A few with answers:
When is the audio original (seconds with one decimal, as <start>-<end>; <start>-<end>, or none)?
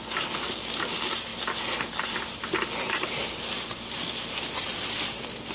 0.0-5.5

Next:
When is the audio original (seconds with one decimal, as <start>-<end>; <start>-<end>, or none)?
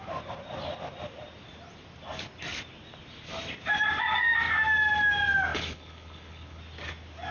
0.0-5.5; 6.6-7.3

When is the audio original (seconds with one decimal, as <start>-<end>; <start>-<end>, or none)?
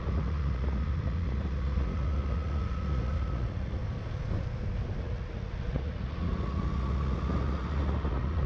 3.8-5.0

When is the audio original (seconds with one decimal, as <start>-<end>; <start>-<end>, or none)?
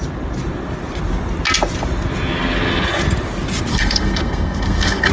0.0-3.7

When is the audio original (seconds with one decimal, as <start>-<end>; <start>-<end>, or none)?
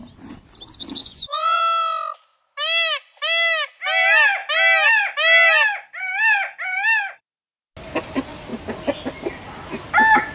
0.0-1.0; 1.6-10.3